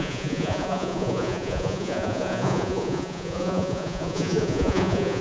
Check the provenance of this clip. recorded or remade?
remade